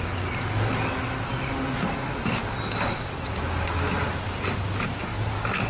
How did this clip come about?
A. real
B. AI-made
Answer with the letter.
A